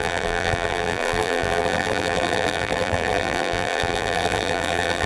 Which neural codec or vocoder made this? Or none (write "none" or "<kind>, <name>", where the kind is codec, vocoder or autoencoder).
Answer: vocoder, BigVGAN v2